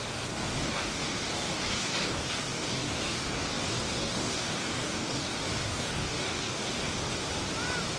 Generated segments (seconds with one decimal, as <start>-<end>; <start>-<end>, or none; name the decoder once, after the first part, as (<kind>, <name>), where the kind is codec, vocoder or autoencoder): 0.0-7.1 (codec, DAC)